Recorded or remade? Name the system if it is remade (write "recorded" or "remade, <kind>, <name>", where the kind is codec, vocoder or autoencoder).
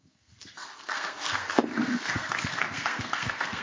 remade, codec, SNAC